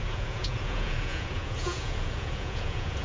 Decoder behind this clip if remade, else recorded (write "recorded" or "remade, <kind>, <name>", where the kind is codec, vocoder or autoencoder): remade, vocoder, Vocos